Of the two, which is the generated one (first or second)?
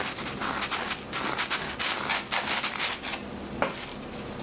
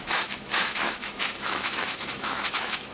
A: second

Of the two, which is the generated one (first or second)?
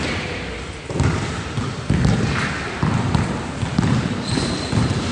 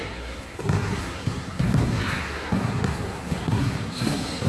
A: second